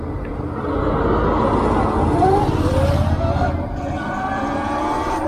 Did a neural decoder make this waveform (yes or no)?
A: no